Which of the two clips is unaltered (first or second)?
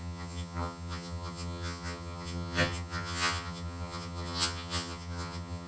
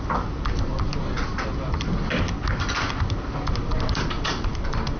second